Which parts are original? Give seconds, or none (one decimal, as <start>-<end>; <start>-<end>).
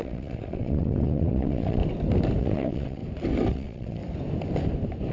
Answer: 1.8-2.4; 3.0-3.5; 4.0-5.1